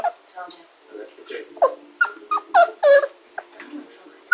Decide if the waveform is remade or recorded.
recorded